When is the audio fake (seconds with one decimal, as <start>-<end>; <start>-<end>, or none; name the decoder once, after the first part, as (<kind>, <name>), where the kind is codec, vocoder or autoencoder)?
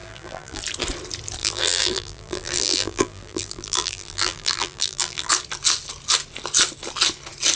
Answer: 0.0-0.6 (vocoder, BigVGAN v2); 1.4-5.3